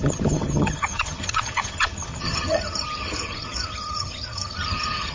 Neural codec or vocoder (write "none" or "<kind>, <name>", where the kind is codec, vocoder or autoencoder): vocoder, HiFi-GAN